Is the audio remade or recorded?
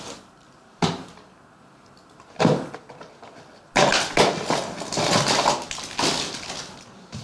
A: recorded